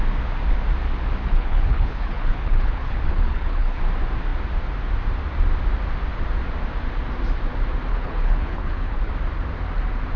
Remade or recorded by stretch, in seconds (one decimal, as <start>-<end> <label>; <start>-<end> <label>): 0.0-1.2 recorded; 1.2-3.8 remade; 3.8-7.9 recorded; 7.9-9.1 remade; 9.1-10.2 recorded